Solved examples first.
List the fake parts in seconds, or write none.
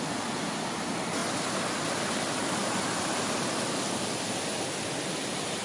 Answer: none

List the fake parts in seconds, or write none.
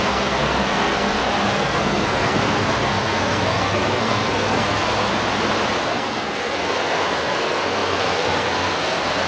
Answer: 0.0-5.1 (codec, SNAC); 5.9-9.3